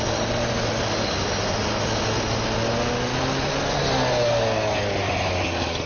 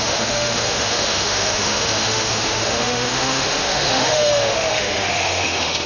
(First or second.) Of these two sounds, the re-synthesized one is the second